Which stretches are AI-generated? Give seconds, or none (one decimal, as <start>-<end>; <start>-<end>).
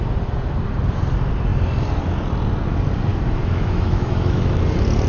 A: 3.1-4.6